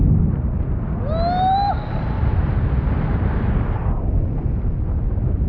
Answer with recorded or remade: recorded